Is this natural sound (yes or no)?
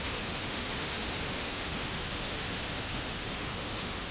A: no